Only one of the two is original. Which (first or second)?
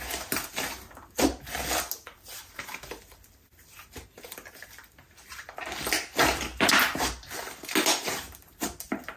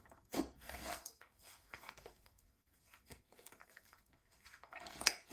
first